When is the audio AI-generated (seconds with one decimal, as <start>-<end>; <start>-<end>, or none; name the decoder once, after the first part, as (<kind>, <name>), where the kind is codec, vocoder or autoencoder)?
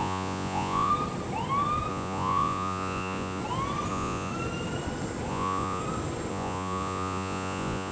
0.0-0.9 (vocoder, Vocos); 1.9-3.4; 3.9-4.3; 5.3-5.8; 6.3-7.9